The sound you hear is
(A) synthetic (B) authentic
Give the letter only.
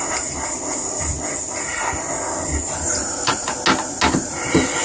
B